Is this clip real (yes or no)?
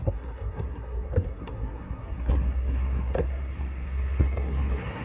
no